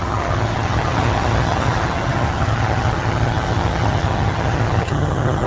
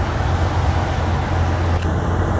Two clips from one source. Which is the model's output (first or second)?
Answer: first